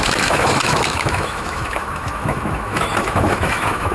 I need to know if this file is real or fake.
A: fake